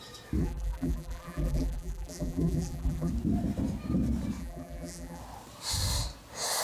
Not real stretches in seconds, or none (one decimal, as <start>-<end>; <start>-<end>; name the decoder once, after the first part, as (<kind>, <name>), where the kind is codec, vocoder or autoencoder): 0.4-3.1 (vocoder, BigVGAN v2); 4.4-5.2